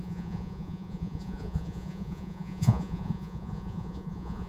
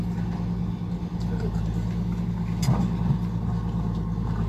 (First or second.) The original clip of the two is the second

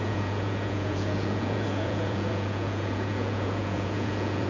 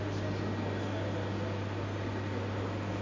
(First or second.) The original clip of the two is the second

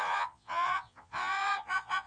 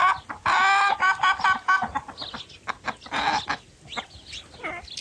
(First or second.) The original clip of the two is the second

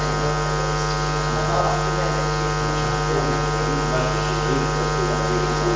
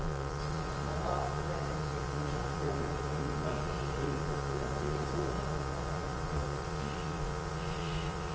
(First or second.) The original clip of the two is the first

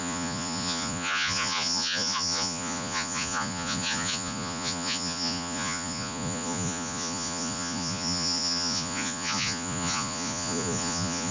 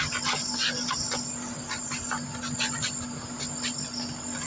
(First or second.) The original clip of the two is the second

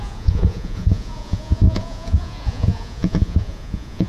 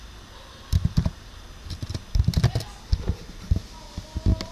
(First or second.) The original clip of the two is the second